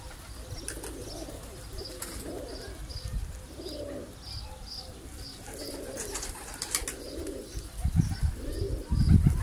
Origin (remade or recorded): recorded